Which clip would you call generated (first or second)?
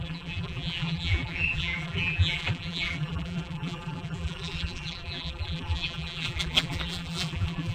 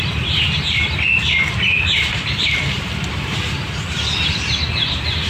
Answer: first